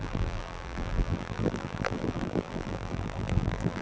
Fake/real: fake